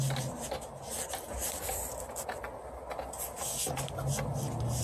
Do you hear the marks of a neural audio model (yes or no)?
no